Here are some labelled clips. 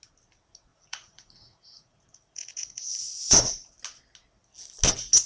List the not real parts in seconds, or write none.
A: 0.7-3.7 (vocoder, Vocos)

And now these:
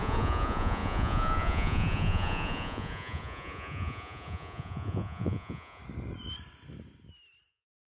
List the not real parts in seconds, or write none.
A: 0.0-5.8 (vocoder, Vocos); 7.5-7.9

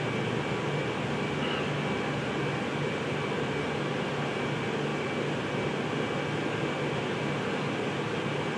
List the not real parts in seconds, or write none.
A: none

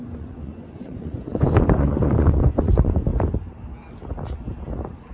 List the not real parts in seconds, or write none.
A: 0.0-3.1 (vocoder, Vocos)

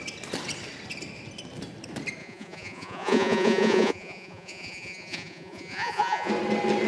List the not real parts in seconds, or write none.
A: 2.2-6.3 (vocoder, Vocos)

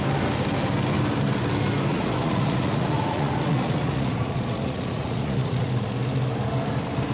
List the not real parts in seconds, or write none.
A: 1.9-5.7 (vocoder, Vocos)

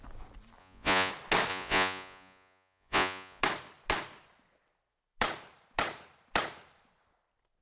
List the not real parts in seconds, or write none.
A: 0.6-1.1 (vocoder, Vocos); 1.5-3.4

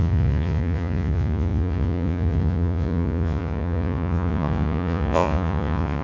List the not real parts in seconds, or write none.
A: 0.0-6.0 (vocoder, Vocos)